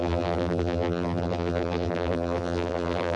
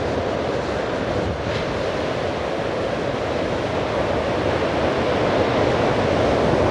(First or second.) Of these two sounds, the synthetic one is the first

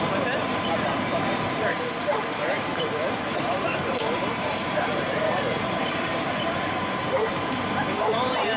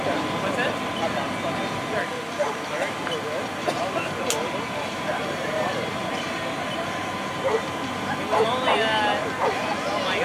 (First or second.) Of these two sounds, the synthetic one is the first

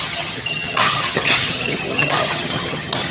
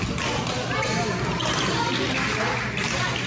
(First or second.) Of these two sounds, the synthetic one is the first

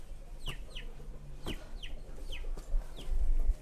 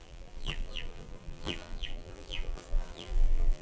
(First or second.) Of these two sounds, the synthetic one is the second